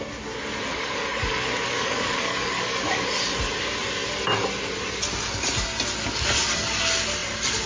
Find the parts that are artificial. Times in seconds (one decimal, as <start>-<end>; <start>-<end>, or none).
0.7-3.2